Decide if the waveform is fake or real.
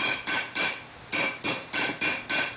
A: real